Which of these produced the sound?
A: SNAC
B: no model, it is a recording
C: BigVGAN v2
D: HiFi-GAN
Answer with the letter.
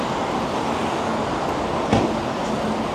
B